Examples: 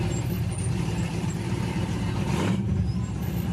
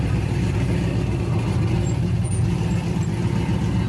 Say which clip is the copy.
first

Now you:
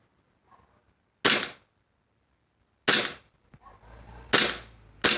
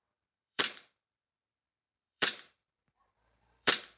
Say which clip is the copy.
second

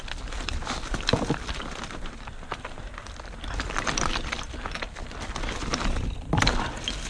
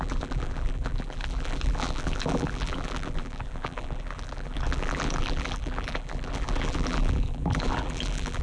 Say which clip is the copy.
second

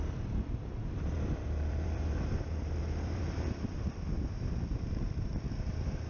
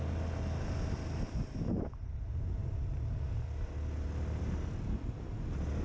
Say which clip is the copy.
first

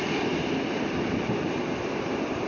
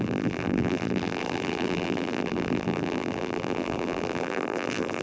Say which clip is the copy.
second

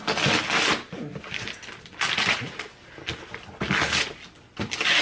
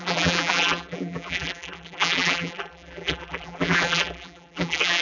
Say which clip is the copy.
second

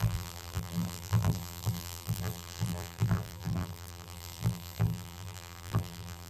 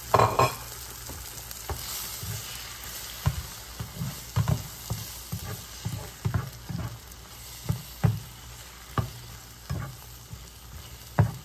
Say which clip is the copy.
first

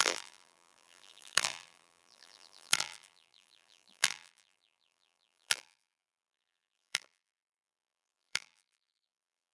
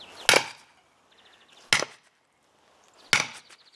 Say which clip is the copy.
first